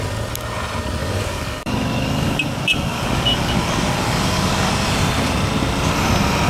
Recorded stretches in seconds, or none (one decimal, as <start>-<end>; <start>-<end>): 0.0-1.0; 4.7-6.5